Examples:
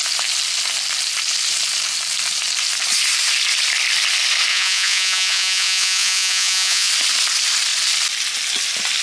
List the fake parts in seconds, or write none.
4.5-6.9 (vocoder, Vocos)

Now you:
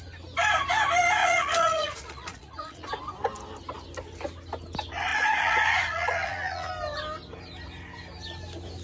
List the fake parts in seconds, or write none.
1.2-2.9 (vocoder, Vocos); 5.1-6.7

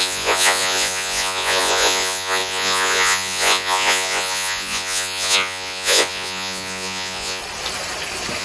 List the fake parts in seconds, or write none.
0.0-7.4 (vocoder, Vocos)

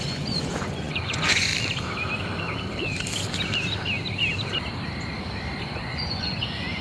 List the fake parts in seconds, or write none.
0.0-1.5 (vocoder, Vocos); 5.6-6.8

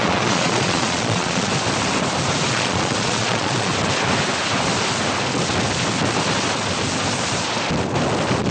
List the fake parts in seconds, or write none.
0.0-1.5 (vocoder, Vocos); 2.5-3.7

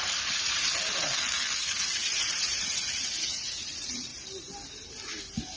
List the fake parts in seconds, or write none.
0.0-0.7 (vocoder, Vocos); 1.6-4.1